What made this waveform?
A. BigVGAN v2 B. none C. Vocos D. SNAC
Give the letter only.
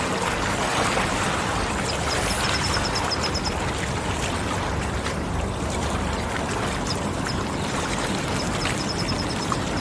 A